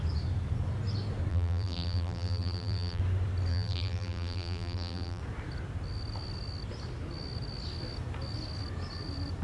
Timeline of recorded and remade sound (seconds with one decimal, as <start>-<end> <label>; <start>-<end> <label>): 0.0-1.3 recorded; 1.3-3.0 remade; 3.0-3.5 recorded; 3.5-5.2 remade; 5.2-9.4 recorded